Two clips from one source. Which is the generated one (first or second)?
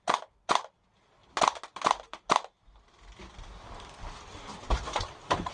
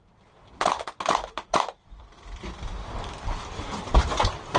second